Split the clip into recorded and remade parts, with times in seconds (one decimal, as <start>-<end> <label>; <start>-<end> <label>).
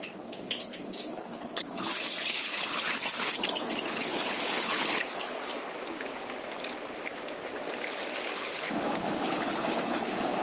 0.0-5.5 remade; 5.5-8.4 recorded; 8.4-10.4 remade